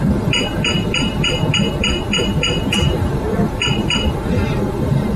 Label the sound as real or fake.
real